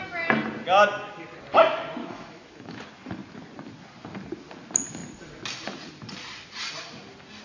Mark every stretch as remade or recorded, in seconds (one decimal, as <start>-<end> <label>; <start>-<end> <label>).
0.0-2.0 recorded; 2.0-2.8 remade; 2.8-7.4 recorded